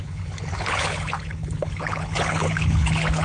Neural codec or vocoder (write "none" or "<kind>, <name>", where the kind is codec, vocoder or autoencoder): codec, HILCodec